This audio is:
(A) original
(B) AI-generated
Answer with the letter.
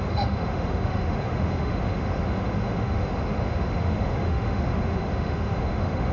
B